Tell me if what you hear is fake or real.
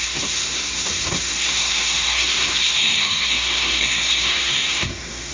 fake